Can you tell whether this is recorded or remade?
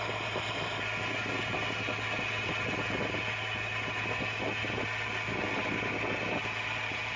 recorded